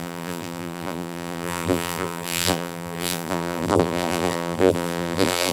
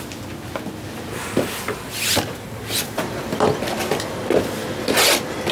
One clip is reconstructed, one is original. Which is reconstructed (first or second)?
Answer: first